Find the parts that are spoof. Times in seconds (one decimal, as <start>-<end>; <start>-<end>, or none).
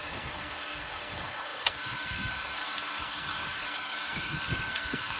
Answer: 0.0-5.2